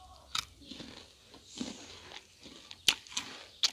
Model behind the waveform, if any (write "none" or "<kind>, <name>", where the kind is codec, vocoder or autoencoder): none